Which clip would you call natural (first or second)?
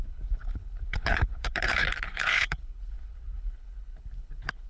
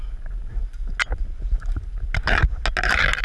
second